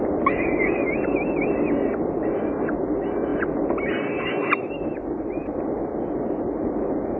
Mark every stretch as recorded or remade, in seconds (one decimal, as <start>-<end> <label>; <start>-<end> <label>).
0.0-7.2 recorded